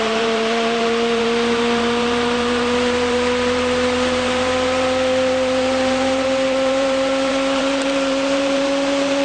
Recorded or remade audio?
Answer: remade